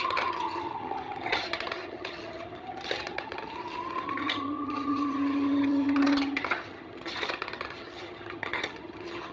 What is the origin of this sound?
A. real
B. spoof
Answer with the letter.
B